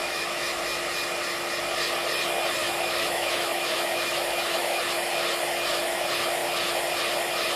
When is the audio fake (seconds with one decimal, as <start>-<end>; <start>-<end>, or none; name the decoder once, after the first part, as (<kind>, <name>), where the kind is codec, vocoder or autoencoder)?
0.0-0.6 (autoencoder, DAC-VAE); 2.6-4.8